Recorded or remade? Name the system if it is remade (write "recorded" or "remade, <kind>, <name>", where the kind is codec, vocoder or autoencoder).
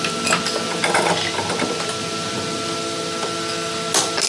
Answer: recorded